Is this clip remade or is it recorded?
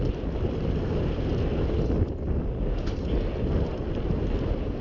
recorded